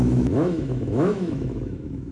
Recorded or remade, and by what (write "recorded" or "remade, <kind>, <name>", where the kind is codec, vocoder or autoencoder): remade, autoencoder, DAC-VAE